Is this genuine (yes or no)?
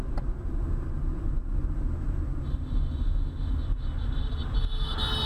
yes